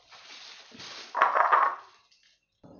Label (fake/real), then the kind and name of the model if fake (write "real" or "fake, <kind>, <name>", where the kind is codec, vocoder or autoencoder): real